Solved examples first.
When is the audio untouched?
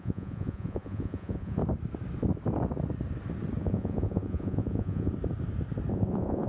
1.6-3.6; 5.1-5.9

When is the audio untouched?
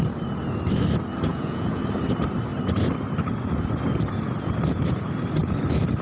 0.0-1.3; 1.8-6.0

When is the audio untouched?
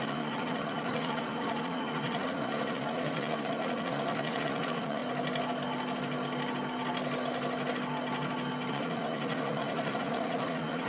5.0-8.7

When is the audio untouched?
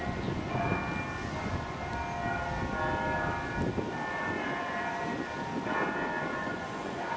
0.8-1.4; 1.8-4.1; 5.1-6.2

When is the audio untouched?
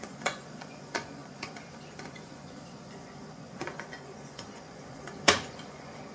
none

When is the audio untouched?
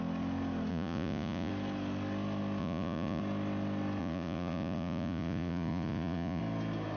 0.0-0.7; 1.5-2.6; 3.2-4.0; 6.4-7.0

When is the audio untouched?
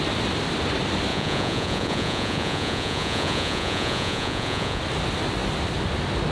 0.0-1.1; 4.8-6.3